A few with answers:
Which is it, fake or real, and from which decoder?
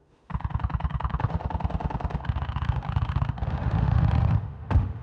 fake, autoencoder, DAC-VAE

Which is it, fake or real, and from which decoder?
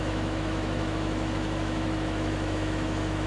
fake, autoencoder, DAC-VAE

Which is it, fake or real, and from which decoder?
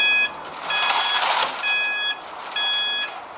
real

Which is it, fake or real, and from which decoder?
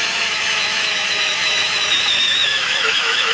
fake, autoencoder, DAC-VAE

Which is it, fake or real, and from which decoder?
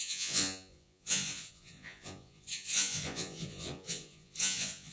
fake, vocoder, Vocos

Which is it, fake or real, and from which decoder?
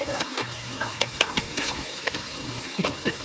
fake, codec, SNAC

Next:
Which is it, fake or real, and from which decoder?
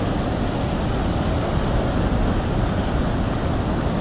real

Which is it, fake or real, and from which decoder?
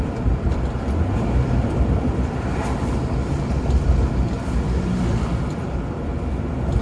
fake, vocoder, BigVGAN v2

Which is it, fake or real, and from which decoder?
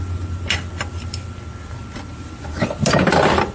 real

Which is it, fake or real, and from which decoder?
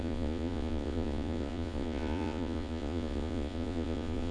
fake, vocoder, Vocos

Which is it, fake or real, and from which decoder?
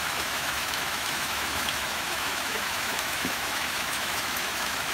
fake, autoencoder, DAC-VAE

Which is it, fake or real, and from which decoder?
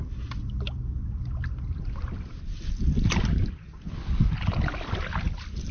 real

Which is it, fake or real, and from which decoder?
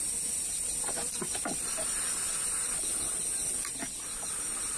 real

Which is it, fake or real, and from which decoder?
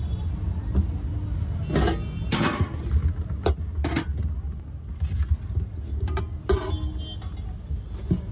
real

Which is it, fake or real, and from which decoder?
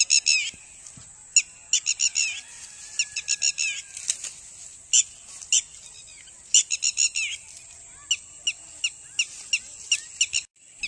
real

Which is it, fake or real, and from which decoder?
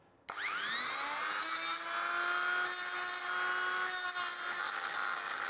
real